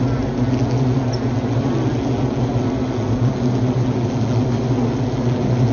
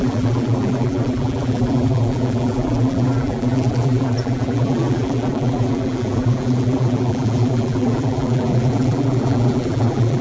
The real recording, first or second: first